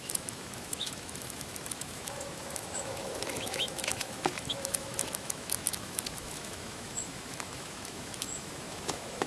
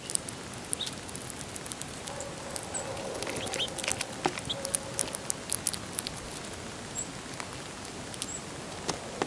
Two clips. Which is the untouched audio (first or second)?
second